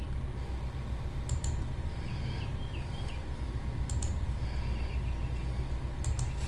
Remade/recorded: recorded